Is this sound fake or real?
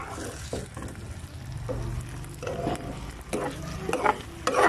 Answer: real